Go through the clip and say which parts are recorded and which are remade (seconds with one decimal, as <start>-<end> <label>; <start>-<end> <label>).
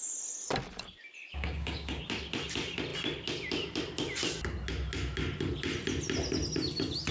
0.0-1.3 recorded; 1.3-2.0 remade; 2.0-7.1 recorded